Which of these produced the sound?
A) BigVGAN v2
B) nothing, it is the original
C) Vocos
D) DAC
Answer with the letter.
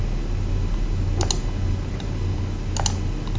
B